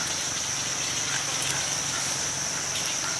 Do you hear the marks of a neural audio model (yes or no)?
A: no